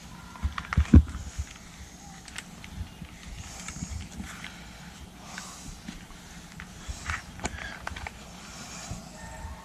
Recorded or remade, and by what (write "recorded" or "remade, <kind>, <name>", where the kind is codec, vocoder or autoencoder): recorded